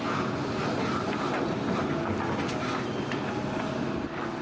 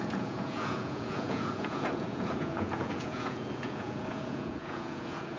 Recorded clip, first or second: first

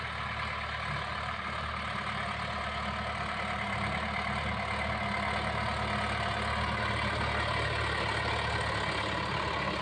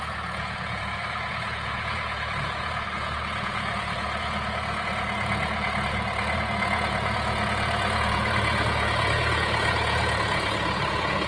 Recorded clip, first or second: first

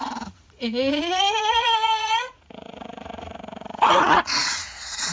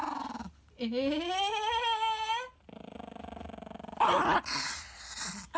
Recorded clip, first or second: second